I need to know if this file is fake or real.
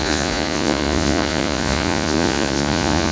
fake